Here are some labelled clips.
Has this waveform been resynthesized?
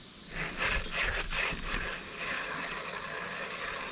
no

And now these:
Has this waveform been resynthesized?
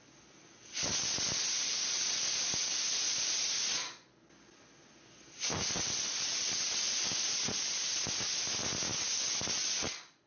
no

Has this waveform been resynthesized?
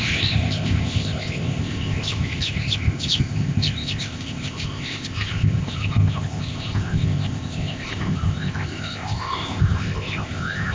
yes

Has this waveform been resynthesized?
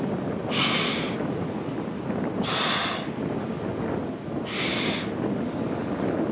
no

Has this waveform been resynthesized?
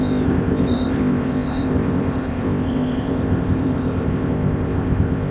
yes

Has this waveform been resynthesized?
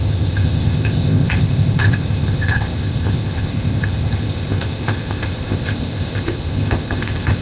yes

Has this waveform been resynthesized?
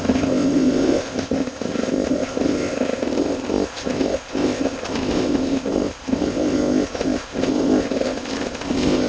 yes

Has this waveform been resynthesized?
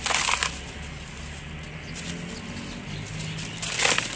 no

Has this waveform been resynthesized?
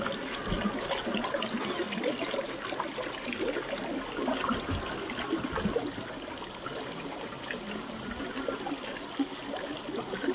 no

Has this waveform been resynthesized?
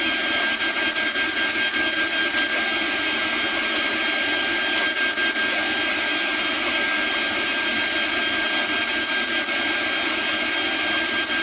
no